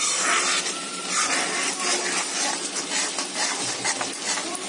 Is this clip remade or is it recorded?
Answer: recorded